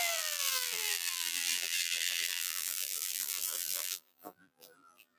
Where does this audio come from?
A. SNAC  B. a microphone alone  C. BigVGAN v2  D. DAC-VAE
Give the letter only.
C